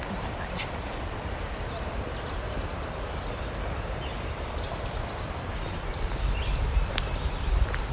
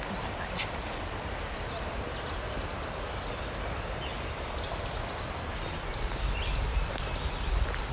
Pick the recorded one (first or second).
second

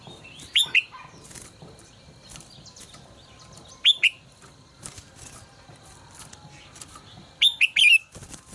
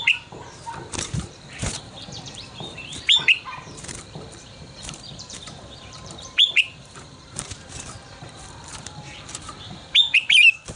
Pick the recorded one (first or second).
first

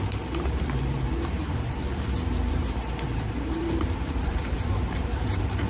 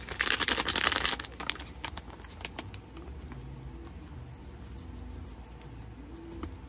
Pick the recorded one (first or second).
second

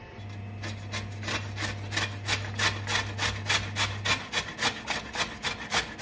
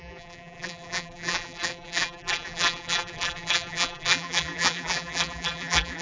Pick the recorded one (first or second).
first